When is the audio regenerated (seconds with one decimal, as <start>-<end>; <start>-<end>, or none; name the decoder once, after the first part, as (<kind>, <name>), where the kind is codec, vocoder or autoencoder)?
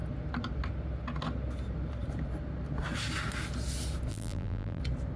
4.1-4.8 (vocoder, BigVGAN v2)